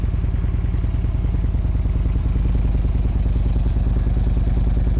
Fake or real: real